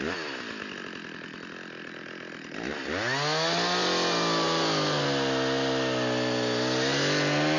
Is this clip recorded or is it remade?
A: recorded